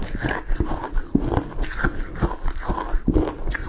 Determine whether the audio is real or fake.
real